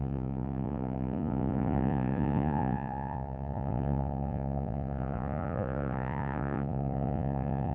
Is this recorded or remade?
remade